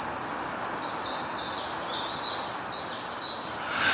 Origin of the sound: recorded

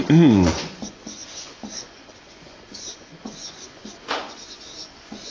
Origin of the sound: remade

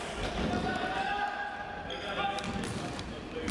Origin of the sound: recorded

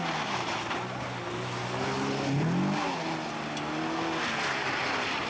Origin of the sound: recorded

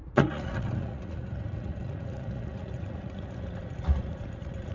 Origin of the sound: remade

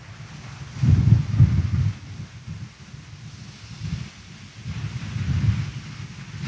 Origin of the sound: recorded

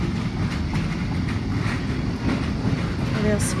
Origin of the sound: recorded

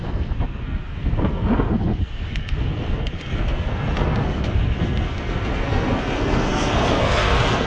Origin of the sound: remade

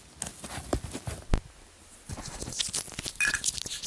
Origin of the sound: recorded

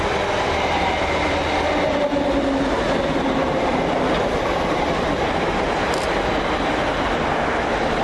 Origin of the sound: recorded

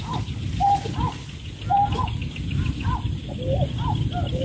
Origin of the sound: recorded